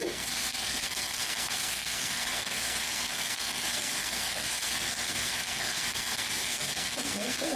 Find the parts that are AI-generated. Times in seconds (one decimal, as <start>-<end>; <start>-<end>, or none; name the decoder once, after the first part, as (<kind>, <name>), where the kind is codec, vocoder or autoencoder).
0.0-7.6 (codec, SNAC)